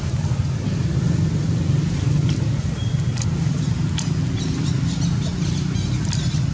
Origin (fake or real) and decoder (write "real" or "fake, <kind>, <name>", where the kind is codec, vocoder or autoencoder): real